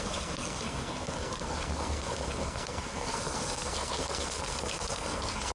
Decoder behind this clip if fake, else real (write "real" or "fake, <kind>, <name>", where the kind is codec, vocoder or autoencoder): fake, codec, SNAC